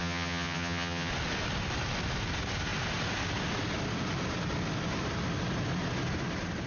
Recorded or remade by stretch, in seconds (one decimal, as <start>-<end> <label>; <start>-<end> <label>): 0.0-1.1 remade; 1.1-6.7 recorded